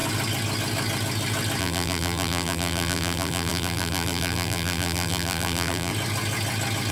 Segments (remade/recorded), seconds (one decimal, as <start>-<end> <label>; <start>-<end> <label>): 0.0-1.6 recorded; 1.6-5.9 remade; 5.9-6.9 recorded